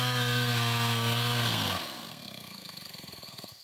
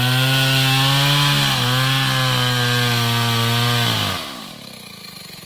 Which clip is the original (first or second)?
second